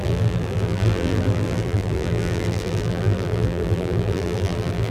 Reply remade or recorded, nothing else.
remade